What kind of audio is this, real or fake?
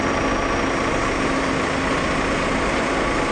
real